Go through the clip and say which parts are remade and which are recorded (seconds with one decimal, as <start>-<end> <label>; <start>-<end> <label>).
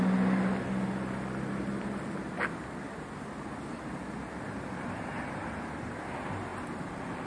0.0-7.3 recorded